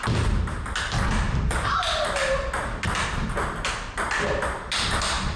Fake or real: real